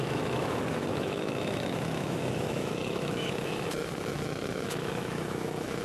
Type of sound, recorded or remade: remade